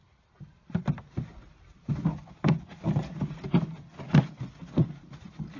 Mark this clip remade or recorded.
recorded